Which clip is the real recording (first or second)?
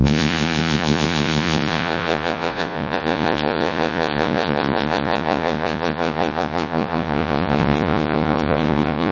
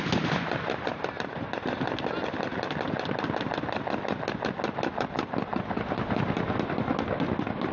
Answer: second